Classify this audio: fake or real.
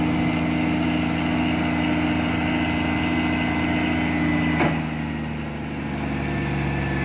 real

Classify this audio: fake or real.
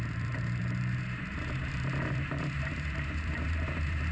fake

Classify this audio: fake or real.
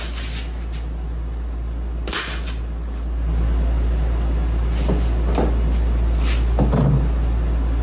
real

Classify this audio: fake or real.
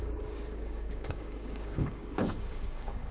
fake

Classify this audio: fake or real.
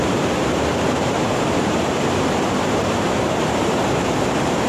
fake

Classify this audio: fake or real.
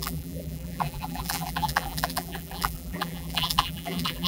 fake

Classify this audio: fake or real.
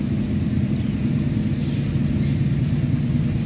real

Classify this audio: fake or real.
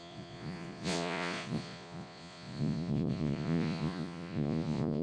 fake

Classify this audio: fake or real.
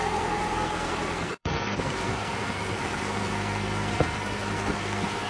fake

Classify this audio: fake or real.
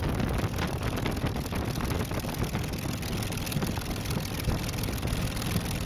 real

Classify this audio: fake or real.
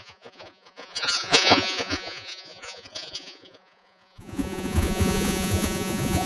fake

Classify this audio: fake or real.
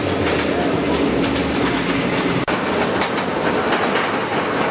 real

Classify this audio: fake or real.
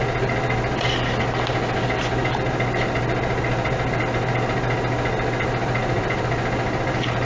real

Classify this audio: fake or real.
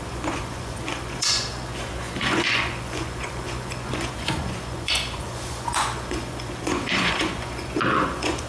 fake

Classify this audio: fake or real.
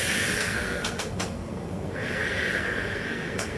fake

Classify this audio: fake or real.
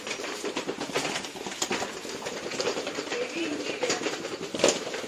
fake